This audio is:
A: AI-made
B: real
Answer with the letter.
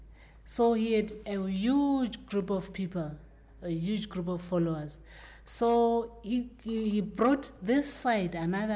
B